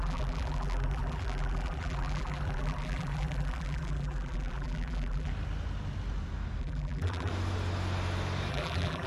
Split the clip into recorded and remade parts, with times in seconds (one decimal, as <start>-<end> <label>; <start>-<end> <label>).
0.0-5.3 remade; 5.3-6.6 recorded; 6.6-7.3 remade; 7.3-8.5 recorded; 8.5-9.1 remade